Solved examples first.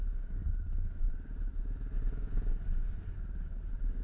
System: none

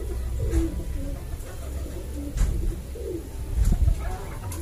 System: none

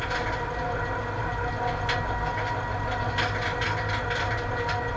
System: none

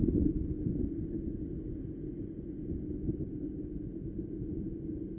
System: none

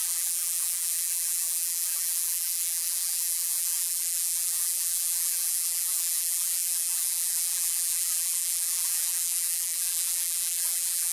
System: vocoder, BigVGAN v2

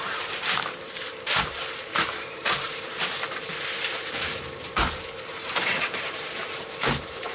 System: vocoder, BigVGAN v2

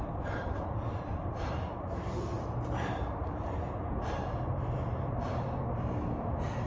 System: vocoder, BigVGAN v2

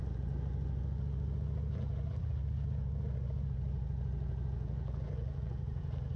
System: vocoder, BigVGAN v2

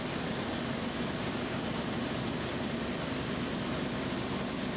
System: none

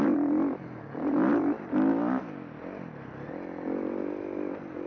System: none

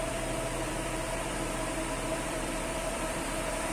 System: vocoder, BigVGAN v2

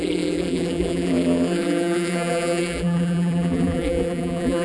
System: vocoder, BigVGAN v2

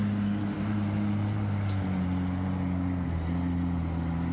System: none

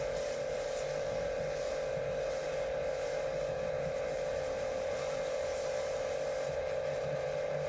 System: vocoder, BigVGAN v2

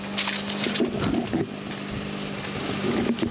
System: none